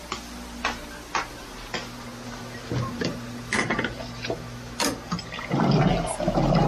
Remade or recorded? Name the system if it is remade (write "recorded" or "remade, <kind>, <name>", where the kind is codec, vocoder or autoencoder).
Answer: recorded